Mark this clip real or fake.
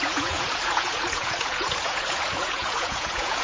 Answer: fake